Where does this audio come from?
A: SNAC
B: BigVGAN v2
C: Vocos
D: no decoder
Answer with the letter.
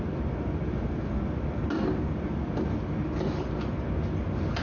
D